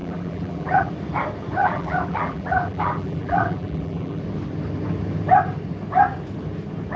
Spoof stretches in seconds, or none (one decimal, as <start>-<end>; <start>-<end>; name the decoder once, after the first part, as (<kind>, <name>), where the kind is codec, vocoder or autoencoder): 0.0-0.9 (vocoder, BigVGAN v2); 1.6-4.2